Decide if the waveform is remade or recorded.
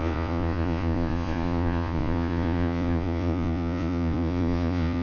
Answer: remade